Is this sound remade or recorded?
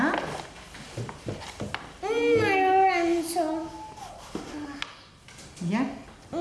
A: recorded